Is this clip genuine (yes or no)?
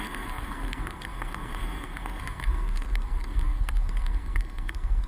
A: no